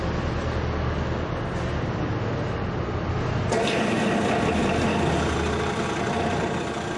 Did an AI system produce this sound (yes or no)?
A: no